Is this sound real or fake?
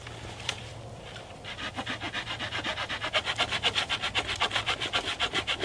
fake